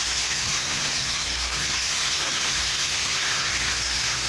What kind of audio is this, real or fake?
fake